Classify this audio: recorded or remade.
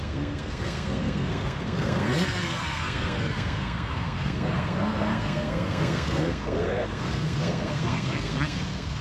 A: remade